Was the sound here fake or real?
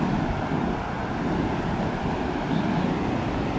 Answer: real